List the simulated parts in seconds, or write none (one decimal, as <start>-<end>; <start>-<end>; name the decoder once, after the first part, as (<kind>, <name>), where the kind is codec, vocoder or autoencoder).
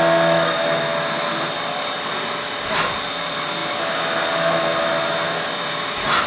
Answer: none